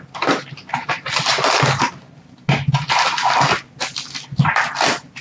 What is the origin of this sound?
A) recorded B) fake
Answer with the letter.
A